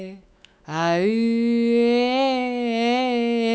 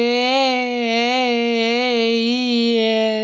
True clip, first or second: second